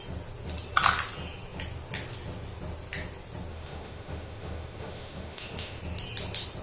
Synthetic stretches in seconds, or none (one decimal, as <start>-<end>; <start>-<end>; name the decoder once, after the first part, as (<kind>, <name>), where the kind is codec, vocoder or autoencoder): 3.5-5.8 (autoencoder, DAC-VAE)